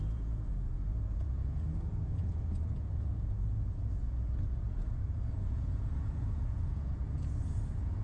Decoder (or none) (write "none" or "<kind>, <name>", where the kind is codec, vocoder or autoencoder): vocoder, Vocos